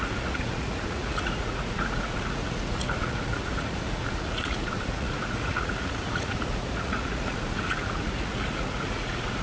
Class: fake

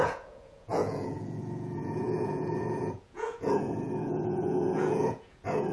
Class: fake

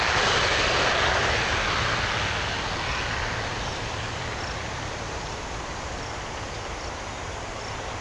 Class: real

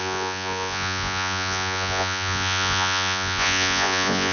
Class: fake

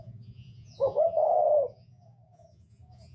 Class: fake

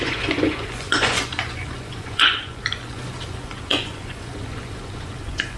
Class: fake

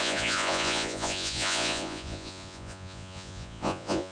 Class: fake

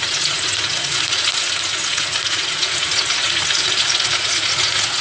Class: fake